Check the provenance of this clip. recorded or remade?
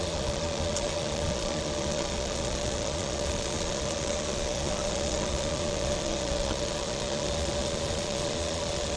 remade